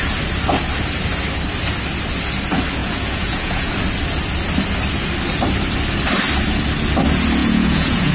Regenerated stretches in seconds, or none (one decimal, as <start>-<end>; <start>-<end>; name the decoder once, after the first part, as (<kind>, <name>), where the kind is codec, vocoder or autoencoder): 2.8-3.7 (vocoder, Vocos); 7.4-8.1